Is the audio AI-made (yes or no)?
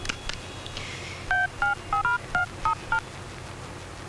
no